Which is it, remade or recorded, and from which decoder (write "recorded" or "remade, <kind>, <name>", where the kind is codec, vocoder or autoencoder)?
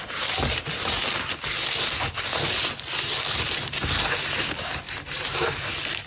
recorded